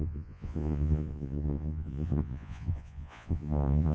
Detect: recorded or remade remade